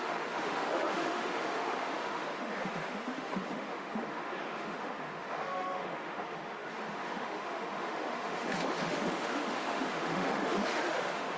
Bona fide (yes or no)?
no